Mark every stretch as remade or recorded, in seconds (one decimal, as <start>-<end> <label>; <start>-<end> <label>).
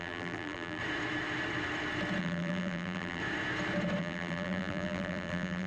0.0-0.8 remade; 0.8-2.2 recorded; 2.2-3.2 remade; 3.2-4.0 recorded; 4.0-5.7 remade